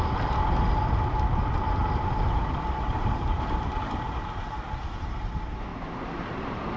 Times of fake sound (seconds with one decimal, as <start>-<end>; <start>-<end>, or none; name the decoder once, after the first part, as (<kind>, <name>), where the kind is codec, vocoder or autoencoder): 3.3-3.9 (vocoder, BigVGAN v2); 5.7-6.8

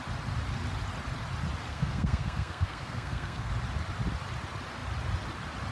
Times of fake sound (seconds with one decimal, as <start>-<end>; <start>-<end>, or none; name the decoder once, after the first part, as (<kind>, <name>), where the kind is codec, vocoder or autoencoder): 1.7-3.5 (codec, SNAC)

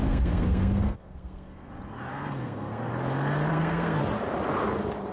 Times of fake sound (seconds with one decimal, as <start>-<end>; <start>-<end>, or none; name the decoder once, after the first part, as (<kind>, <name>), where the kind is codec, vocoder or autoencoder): 0.0-1.7 (codec, SNAC); 2.1-2.9; 3.5-4.0